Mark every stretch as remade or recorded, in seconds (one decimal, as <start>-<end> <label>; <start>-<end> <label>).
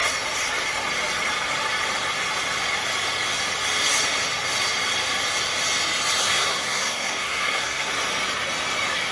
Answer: 0.0-6.2 recorded; 6.2-7.9 remade; 7.9-9.1 recorded